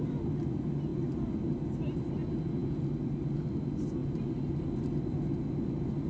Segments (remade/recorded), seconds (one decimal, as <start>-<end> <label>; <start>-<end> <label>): 0.0-6.1 recorded